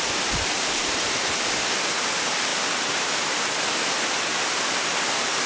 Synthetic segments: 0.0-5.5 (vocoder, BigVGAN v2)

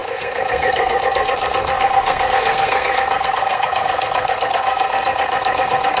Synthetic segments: 0.0-6.0 (codec, SNAC)

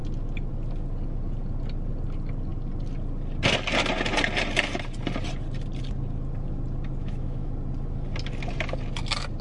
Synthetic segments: 7.0-7.5 (autoencoder, DAC-VAE)

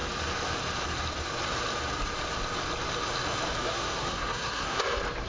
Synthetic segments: 3.6-4.8 (codec, SNAC)

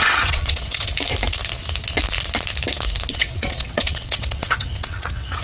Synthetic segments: 0.0-0.9 (vocoder, WaveNeXt); 3.1-5.4

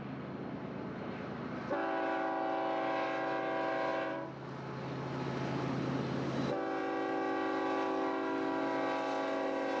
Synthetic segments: none